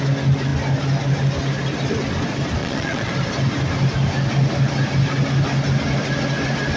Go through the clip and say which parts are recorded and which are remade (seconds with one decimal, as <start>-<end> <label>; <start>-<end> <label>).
0.0-2.6 recorded; 2.6-3.1 remade; 3.1-6.8 recorded